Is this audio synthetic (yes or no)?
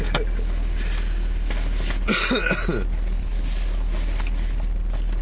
no